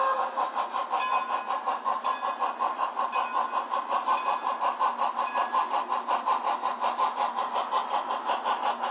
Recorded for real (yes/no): yes